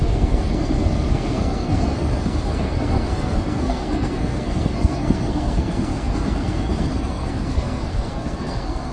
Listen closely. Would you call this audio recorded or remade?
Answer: remade